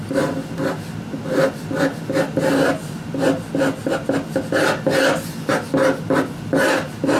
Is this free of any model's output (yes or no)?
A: yes